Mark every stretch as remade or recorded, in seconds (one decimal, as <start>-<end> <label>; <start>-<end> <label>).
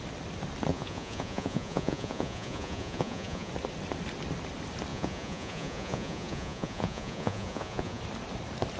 0.0-0.7 recorded; 0.7-3.5 remade; 3.5-4.9 recorded; 4.9-8.0 remade; 8.0-8.8 recorded